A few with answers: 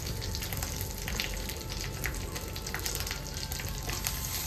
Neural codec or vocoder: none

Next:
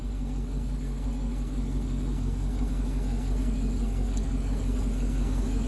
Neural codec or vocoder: codec, SNAC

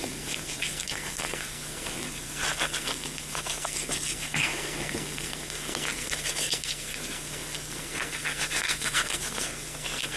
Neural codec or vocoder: codec, SNAC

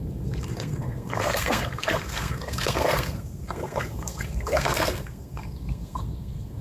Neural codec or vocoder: codec, SNAC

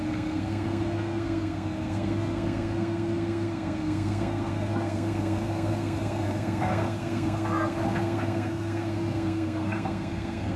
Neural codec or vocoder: codec, SNAC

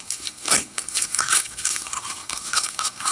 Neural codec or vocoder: codec, SNAC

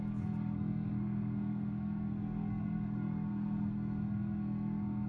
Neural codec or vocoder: codec, SNAC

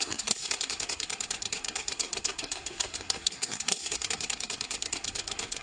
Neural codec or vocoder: codec, SNAC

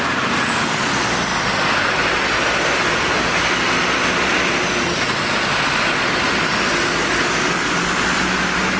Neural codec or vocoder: none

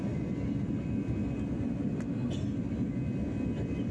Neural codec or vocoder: none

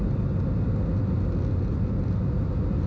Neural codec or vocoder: none